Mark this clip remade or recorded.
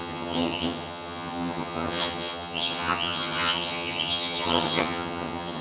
remade